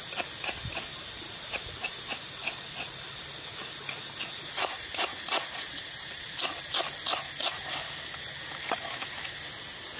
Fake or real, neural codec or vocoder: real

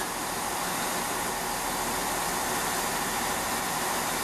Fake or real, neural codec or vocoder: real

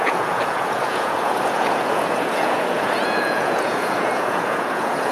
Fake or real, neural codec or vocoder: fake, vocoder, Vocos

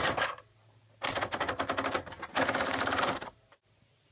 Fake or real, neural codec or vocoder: real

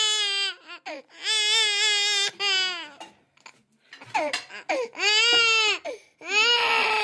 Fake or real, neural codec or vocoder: real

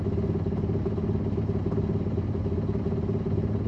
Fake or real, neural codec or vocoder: real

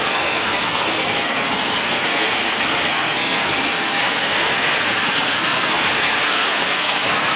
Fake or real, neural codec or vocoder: fake, codec, SNAC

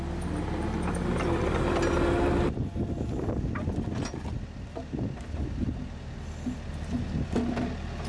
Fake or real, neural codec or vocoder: real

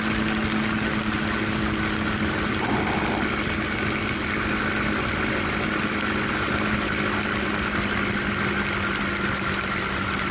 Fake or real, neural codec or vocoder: real